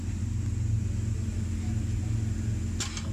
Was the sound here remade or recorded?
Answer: recorded